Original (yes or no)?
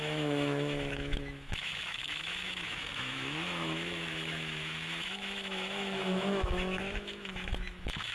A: no